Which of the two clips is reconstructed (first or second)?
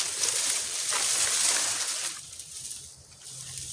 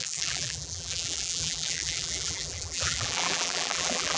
second